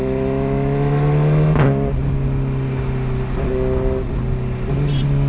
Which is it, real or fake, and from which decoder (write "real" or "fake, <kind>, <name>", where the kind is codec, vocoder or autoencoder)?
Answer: real